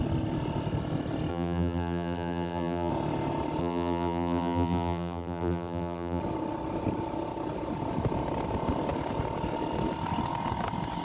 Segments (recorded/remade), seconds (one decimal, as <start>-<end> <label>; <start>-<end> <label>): 0.0-1.3 recorded; 1.3-2.9 remade; 2.9-3.6 recorded; 3.6-6.2 remade; 6.2-11.0 recorded